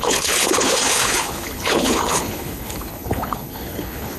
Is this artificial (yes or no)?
yes